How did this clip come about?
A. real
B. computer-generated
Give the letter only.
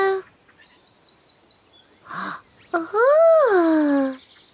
A